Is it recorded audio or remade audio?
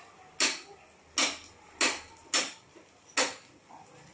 recorded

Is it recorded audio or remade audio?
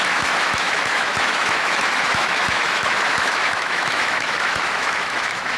remade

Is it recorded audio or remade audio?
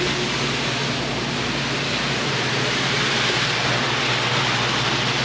recorded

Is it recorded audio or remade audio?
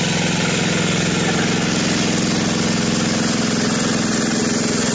recorded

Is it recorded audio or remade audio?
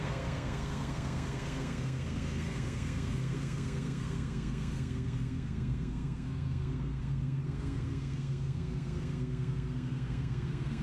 remade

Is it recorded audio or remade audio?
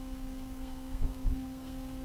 remade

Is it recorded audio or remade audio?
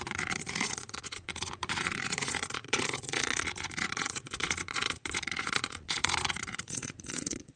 remade